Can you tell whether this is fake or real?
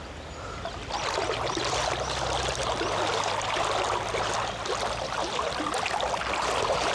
real